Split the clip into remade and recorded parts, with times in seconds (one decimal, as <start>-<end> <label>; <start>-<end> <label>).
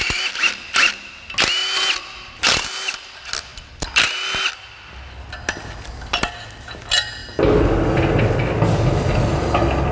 0.0-9.9 recorded